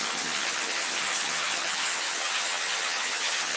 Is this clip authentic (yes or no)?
no